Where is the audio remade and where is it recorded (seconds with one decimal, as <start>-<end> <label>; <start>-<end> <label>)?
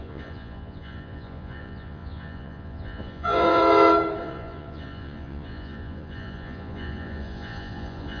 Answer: 0.0-3.6 remade; 3.6-4.2 recorded; 4.2-8.2 remade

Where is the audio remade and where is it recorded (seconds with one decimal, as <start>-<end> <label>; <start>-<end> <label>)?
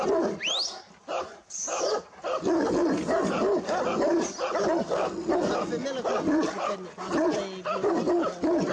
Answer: 0.0-8.7 recorded